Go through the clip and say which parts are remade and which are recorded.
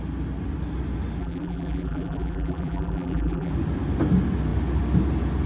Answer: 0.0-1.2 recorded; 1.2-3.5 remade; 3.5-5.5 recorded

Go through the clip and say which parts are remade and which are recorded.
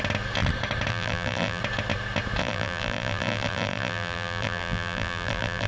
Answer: 0.0-0.9 recorded; 0.9-1.6 remade; 1.6-2.4 recorded; 2.4-5.7 remade